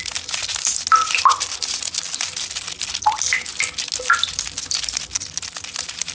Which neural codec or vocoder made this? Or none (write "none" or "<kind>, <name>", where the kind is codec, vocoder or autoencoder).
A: none